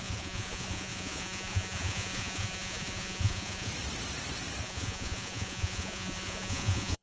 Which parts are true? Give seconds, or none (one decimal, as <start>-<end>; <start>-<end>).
3.7-4.6